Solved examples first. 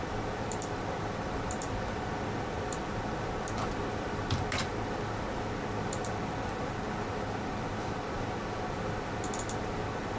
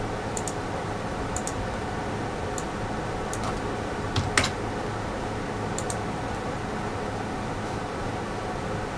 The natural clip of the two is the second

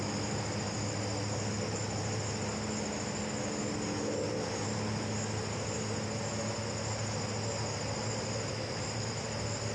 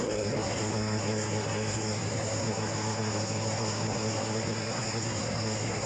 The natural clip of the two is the first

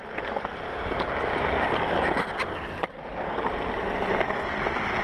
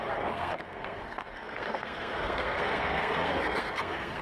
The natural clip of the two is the first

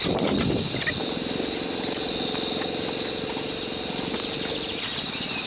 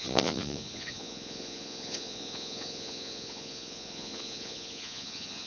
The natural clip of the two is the first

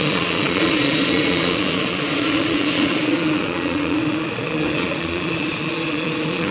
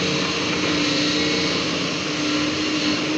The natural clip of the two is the second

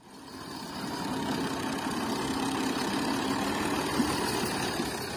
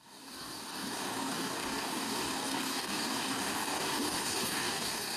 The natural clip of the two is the first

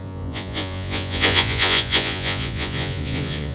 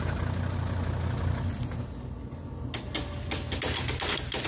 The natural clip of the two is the second